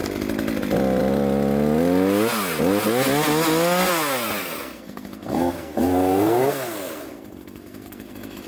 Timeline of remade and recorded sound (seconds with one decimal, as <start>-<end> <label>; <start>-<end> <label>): 0.0-4.4 recorded; 4.4-8.5 remade

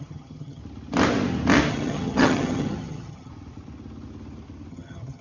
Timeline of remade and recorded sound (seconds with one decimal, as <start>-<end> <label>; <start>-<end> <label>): 0.0-0.6 remade; 0.6-1.7 recorded; 1.7-3.3 remade; 3.3-4.7 recorded; 4.7-5.2 remade

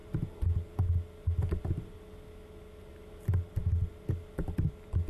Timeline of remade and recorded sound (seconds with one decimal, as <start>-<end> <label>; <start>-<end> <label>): 0.0-5.1 recorded

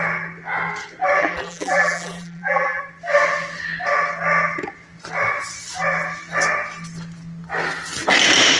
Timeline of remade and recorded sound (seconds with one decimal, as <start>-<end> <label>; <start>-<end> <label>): 0.0-1.2 recorded; 1.2-2.8 remade; 2.8-8.6 recorded

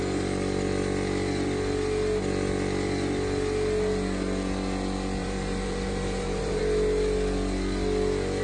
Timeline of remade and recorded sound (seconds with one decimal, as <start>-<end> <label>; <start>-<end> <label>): 0.0-5.2 recorded; 5.2-6.6 remade; 6.6-8.4 recorded

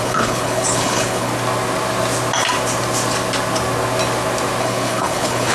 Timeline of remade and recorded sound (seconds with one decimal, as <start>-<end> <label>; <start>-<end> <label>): 0.0-1.3 remade; 1.3-4.6 recorded; 4.6-5.5 remade

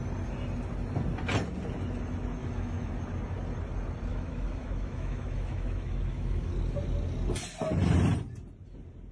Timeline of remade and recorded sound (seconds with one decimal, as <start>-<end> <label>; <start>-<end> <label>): 0.0-2.4 recorded; 2.4-2.9 remade; 2.9-4.1 recorded; 4.1-6.5 remade; 6.5-9.1 recorded